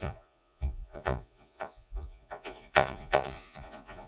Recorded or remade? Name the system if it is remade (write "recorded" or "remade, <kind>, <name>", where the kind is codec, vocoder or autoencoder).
remade, vocoder, Vocos